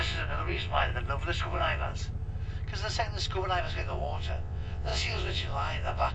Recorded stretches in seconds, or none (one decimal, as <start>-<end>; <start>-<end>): 0.9-1.4; 1.9-3.6